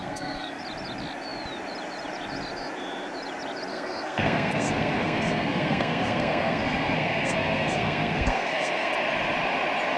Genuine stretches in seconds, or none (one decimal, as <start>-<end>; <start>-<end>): 0.6-3.7; 8.9-10.0